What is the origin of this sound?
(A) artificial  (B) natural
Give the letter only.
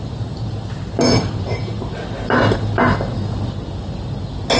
B